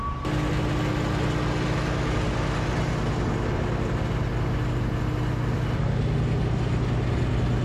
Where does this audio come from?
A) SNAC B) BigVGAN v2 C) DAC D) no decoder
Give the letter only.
D